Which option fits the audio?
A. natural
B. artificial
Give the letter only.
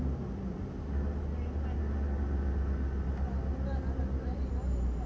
A